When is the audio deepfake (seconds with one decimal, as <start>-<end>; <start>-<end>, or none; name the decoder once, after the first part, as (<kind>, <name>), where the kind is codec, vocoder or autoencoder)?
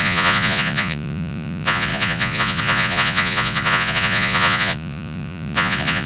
0.0-6.1 (vocoder, Vocos)